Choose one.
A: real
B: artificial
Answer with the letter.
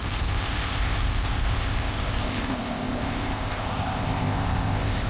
B